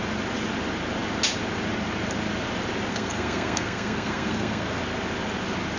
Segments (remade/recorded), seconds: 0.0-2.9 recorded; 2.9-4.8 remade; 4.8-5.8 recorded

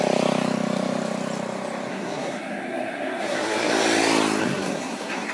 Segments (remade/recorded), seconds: 0.0-1.9 recorded; 1.9-3.7 remade; 3.7-4.4 recorded; 4.4-5.3 remade